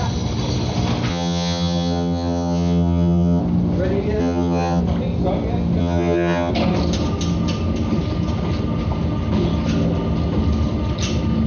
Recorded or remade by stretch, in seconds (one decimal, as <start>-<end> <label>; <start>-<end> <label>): 0.0-1.1 recorded; 1.1-3.4 remade; 3.4-4.2 recorded; 4.2-4.8 remade; 4.8-5.8 recorded; 5.8-6.5 remade; 6.5-11.5 recorded